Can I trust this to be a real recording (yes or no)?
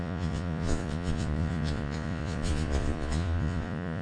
no